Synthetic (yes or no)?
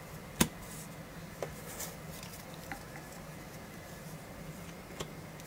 no